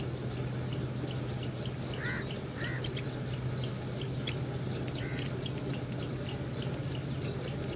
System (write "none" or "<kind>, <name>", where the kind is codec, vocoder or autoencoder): none